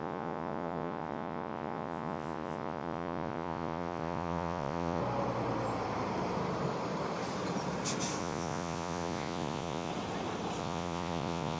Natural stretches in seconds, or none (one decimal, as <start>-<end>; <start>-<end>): 5.0-8.2; 9.9-10.6